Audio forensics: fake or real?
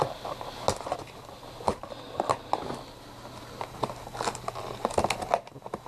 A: real